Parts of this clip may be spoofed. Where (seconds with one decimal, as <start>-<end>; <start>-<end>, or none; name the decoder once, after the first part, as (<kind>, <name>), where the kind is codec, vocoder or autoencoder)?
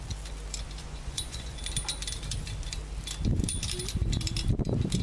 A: 0.8-1.6 (vocoder, Vocos)